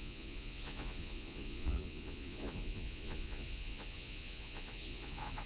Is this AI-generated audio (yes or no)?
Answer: yes